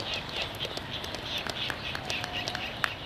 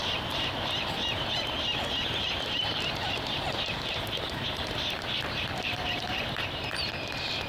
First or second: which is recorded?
first